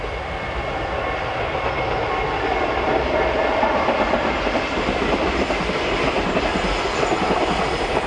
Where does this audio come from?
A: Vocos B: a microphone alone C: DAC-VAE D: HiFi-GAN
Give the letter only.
B